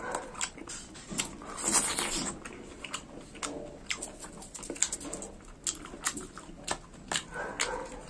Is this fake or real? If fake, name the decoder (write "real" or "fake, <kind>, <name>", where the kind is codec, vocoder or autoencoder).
real